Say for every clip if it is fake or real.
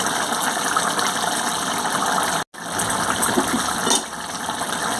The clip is real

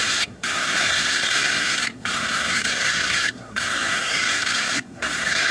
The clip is fake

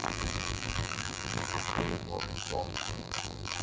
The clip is fake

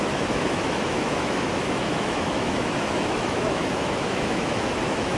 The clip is fake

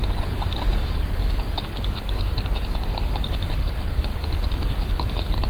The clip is fake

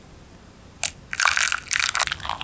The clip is real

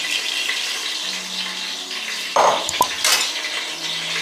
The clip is real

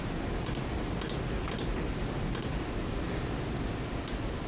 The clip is real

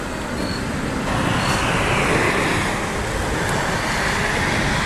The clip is real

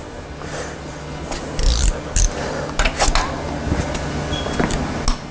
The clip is real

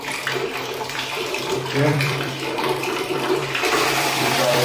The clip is fake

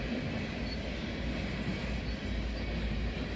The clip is real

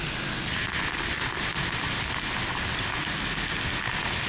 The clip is real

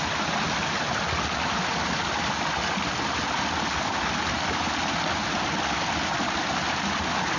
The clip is real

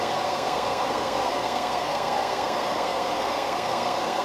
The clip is fake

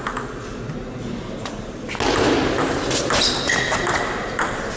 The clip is real